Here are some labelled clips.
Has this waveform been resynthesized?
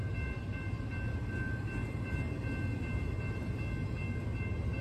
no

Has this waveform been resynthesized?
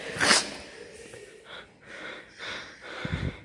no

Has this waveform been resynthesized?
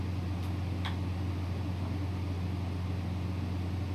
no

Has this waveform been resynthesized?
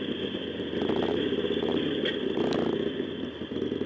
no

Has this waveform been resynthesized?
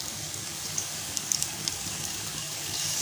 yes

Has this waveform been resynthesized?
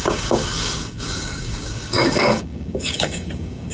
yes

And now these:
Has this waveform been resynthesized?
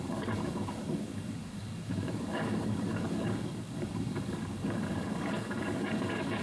yes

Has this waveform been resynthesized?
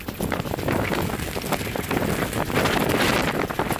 no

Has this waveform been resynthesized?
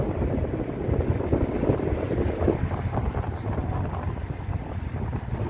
no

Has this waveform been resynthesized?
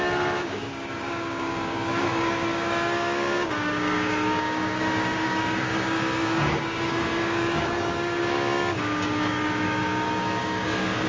yes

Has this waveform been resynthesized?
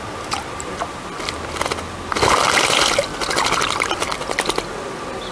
no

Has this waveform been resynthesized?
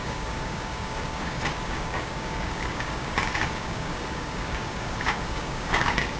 yes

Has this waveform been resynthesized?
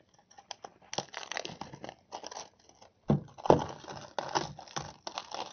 no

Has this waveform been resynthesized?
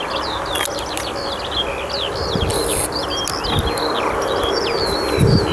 no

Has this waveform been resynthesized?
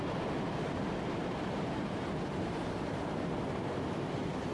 no